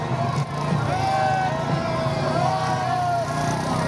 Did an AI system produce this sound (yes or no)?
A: no